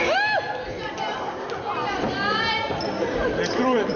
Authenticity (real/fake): real